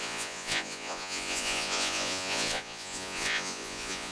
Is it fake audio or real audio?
fake